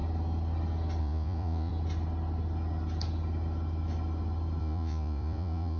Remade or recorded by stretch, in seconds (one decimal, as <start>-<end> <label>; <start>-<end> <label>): 0.0-1.0 recorded; 1.0-1.7 remade; 1.7-4.6 recorded; 4.6-5.8 remade